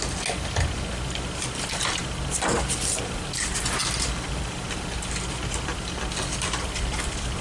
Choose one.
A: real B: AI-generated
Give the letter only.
A